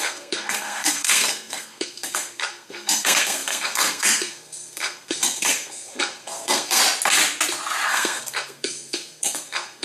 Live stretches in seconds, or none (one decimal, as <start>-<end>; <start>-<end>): 6.8-7.9